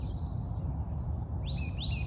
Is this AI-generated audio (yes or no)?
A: no